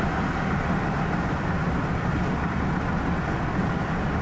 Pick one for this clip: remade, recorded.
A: recorded